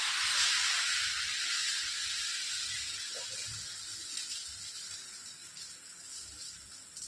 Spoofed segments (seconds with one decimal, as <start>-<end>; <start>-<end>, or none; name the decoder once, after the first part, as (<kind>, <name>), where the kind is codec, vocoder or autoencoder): 2.0-2.7 (vocoder, BigVGAN v2)

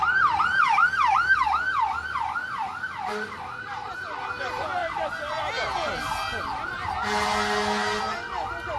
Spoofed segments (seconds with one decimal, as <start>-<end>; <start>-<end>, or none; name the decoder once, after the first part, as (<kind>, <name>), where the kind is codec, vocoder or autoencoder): 0.0-0.5 (vocoder, BigVGAN v2); 3.1-4.8; 8.0-8.8